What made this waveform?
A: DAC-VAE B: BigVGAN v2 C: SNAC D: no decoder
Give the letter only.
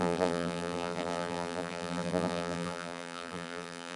B